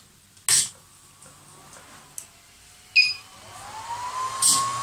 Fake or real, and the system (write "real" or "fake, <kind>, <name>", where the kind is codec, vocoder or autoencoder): real